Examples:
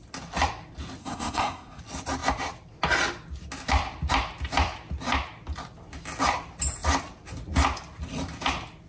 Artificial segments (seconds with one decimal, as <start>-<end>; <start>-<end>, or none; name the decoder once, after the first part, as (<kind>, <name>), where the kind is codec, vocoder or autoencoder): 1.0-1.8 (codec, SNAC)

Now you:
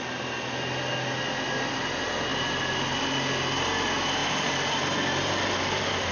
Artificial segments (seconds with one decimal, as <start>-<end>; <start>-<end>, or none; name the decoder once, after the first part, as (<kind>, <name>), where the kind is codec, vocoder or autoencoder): 2.3-3.0 (vocoder, BigVGAN v2); 4.2-6.1

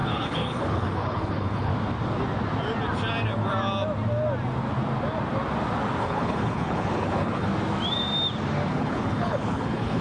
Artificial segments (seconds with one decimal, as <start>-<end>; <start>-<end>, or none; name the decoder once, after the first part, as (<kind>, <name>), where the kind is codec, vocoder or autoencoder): 0.0-1.7 (codec, HILCodec); 6.0-7.5; 8.7-10.0